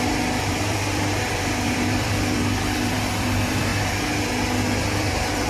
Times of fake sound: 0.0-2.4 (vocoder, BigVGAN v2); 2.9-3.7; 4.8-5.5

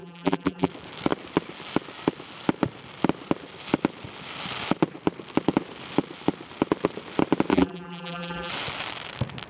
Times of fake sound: 0.0-0.7 (vocoder, BigVGAN v2); 7.5-8.5

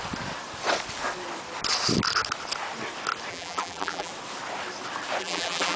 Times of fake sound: 3.3-4.1 (vocoder, BigVGAN v2); 5.2-5.8

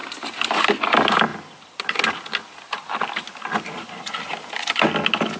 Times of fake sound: none